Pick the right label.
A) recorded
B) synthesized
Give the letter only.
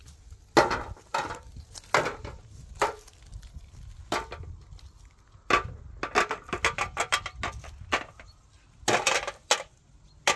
A